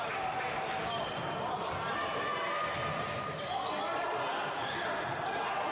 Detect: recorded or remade recorded